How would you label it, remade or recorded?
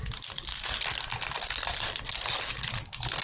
recorded